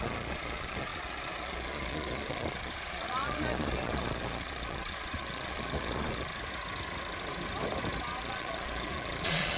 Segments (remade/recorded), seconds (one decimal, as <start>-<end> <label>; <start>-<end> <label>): 0.0-6.3 remade; 6.3-8.2 recorded; 8.2-9.6 remade